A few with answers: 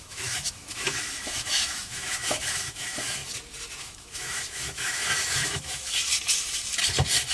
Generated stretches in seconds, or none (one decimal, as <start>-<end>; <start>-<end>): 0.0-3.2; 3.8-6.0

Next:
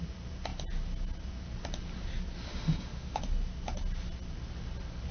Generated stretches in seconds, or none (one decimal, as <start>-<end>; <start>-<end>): 2.5-3.2

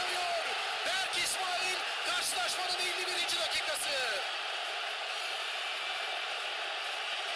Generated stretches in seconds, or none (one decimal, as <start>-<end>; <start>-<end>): none

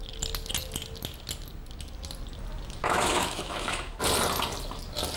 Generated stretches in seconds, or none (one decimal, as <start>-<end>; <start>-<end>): 2.8-4.0

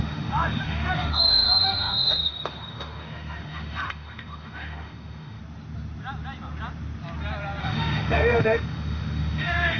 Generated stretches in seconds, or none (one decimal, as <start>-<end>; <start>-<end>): 0.0-5.4; 7.6-9.8

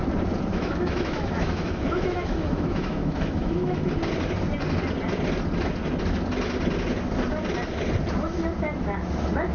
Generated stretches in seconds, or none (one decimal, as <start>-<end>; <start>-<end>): 0.5-3.9

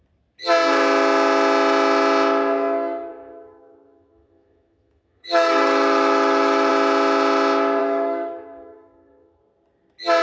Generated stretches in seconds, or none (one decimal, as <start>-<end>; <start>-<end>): 3.1-6.7; 7.8-9.4